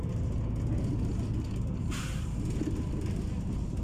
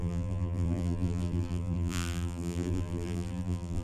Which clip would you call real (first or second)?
first